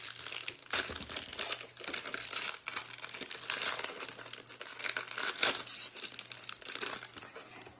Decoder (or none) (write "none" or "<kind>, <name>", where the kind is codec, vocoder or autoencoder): none